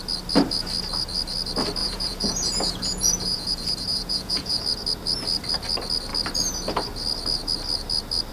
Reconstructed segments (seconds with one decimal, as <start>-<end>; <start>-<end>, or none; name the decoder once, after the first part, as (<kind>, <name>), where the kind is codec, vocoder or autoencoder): 1.8-4.6 (vocoder, Vocos)

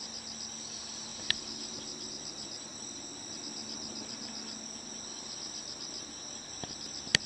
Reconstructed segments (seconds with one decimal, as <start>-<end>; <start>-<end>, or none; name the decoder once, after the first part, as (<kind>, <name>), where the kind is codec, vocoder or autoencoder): none

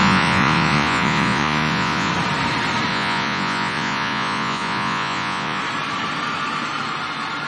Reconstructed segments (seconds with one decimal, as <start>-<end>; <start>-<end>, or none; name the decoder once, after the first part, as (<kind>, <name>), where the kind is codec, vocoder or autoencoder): 0.0-2.1 (vocoder, Vocos); 2.9-5.6